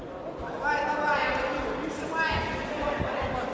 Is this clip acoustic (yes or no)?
yes